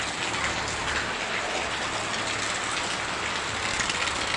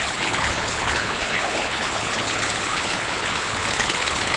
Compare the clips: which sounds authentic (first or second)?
first